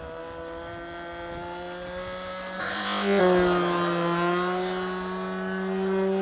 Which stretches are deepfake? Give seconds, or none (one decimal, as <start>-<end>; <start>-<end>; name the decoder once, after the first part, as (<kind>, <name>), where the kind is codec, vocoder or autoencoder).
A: 2.6-3.2 (codec, ZipCodec)